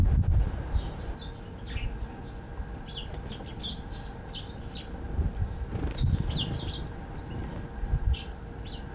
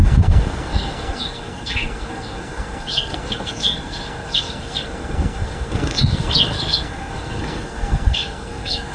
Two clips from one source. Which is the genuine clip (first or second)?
first